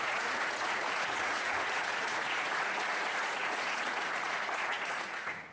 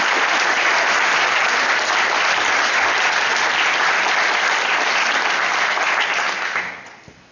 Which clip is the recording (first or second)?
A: second